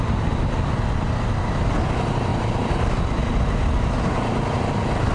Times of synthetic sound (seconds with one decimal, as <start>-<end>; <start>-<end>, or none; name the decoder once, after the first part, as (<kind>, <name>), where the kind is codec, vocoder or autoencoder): none